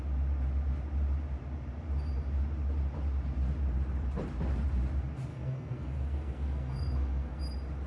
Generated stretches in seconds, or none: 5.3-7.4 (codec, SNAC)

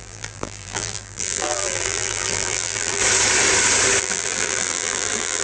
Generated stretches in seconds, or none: 0.0-3.0 (vocoder, BigVGAN v2); 4.0-5.4

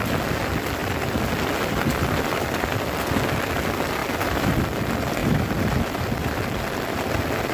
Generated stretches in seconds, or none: 0.8-3.0 (vocoder, BigVGAN v2); 4.0-4.6; 5.2-7.1

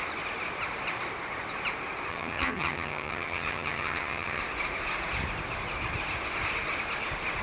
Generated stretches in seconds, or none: 2.1-4.4 (vocoder, HiFi-GAN)

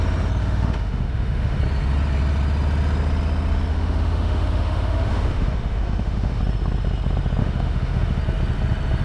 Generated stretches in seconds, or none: 0.4-1.6 (autoencoder, DAC-VAE); 3.7-6.4; 7.4-8.2

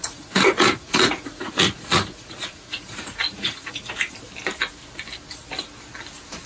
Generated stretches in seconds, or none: 0.0-3.9 (vocoder, Vocos)

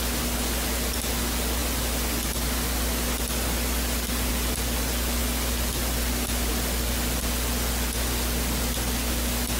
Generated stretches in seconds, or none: 1.6-4.3 (vocoder, BigVGAN v2); 5.2-6.5